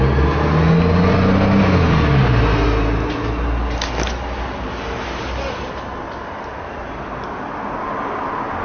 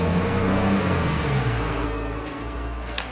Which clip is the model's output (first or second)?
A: second